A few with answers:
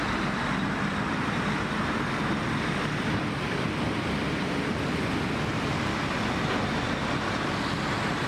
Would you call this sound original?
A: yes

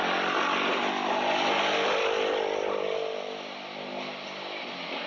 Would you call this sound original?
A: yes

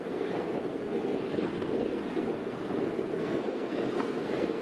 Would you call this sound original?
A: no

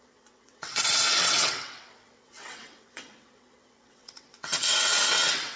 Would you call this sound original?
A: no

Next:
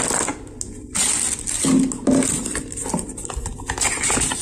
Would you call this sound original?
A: yes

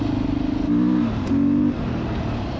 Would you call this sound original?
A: yes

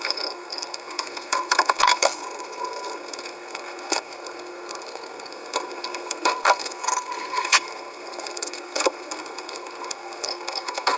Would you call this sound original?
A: no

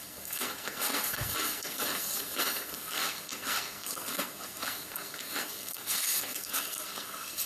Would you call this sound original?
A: no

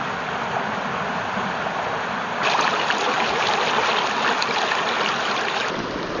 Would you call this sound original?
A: yes